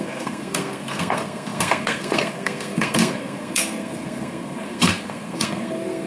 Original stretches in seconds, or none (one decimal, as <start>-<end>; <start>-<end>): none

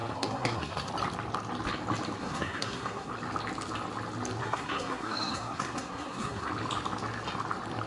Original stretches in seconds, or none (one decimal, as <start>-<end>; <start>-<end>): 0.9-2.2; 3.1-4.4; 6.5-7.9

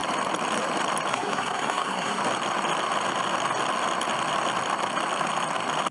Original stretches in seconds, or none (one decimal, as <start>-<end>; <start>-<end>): 0.0-1.1; 2.2-5.9

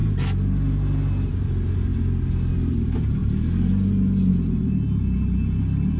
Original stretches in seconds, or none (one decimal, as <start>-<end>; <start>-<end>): 0.0-6.0

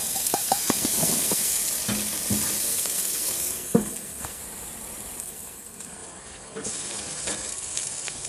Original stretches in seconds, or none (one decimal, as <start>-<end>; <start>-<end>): 1.6-2.6; 4.4-5.2

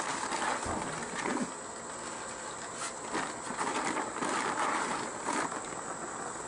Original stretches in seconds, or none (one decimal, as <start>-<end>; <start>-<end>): 0.0-6.5